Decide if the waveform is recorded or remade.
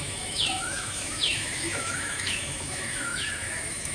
remade